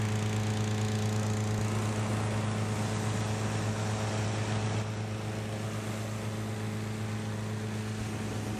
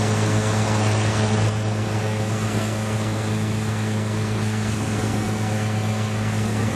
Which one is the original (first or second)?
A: first